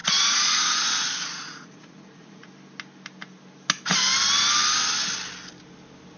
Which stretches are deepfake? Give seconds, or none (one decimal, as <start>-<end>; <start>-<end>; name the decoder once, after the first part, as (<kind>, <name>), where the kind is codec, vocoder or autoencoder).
0.0-2.5 (vocoder, Vocos)